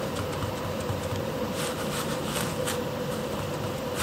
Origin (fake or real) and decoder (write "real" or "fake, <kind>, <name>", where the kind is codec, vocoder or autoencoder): real